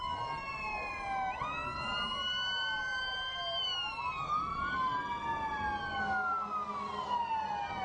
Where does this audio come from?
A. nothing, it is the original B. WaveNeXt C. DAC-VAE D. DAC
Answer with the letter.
A